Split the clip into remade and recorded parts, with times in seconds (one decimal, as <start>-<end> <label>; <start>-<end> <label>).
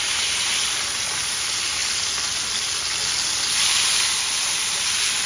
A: 0.0-5.3 recorded